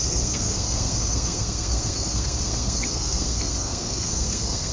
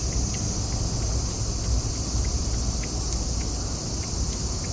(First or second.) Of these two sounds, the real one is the second